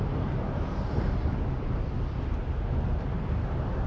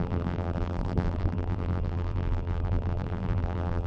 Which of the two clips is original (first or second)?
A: first